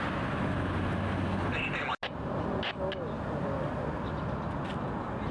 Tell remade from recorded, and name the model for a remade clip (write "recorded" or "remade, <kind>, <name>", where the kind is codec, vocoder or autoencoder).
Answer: recorded